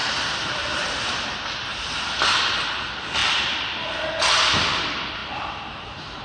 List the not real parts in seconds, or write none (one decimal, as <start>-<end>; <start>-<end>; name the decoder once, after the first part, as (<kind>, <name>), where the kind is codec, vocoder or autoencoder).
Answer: 0.0-0.8 (vocoder, BigVGAN v2); 1.7-2.3; 3.2-3.9; 5.2-6.2